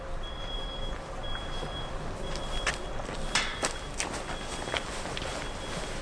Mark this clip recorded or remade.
recorded